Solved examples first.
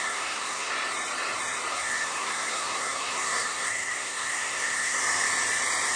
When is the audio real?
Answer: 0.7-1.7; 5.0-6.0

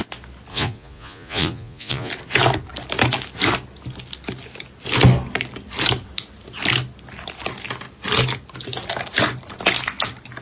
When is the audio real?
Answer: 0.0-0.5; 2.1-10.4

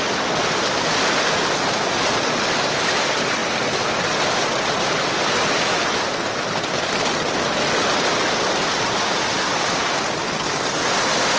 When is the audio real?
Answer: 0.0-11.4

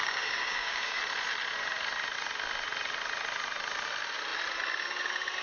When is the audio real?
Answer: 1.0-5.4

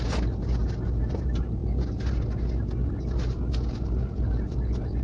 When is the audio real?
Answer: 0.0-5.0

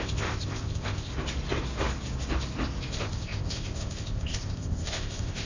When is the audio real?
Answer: 1.1-2.9

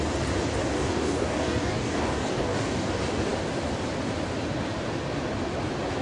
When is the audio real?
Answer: 0.0-0.7; 2.9-6.0

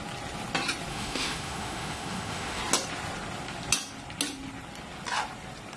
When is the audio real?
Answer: 0.0-0.9; 2.6-5.8